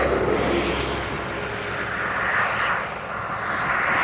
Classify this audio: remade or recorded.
recorded